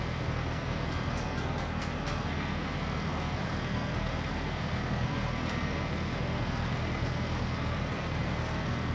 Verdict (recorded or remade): remade